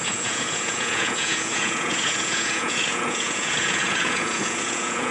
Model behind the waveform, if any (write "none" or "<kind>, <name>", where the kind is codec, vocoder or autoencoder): vocoder, Vocos